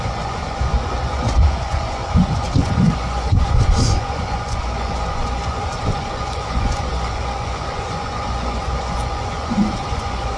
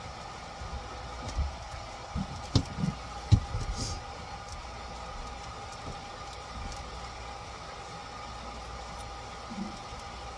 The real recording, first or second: second